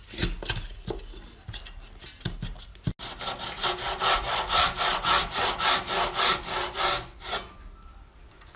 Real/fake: real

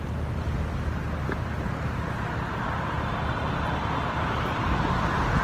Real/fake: real